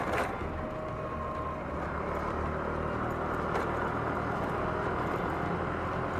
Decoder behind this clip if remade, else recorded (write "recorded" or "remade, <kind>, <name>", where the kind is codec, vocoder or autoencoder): recorded